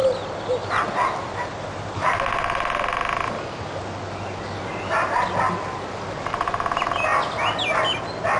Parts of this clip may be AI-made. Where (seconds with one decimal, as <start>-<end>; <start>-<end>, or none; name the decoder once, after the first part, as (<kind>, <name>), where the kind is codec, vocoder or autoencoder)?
none